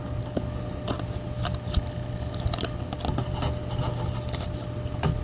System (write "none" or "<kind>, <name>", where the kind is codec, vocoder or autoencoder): none